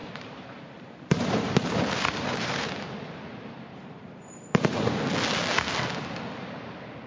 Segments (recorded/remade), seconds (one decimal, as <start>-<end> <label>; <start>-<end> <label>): 0.0-2.7 remade; 2.7-3.3 recorded; 3.3-4.4 remade; 4.4-7.1 recorded